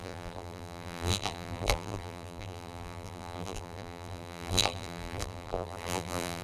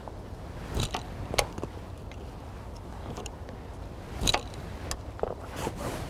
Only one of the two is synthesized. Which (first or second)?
first